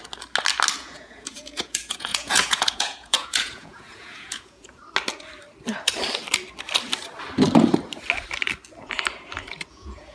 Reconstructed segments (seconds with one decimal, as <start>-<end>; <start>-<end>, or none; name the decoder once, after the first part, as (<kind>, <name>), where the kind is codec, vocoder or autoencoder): 0.8-4.8 (vocoder, Vocos); 9.7-10.1